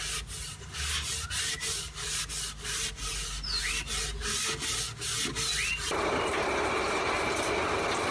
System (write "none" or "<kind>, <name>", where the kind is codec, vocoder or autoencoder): none